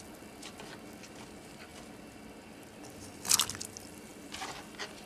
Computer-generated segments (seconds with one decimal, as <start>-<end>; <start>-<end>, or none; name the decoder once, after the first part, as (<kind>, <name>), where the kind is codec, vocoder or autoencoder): none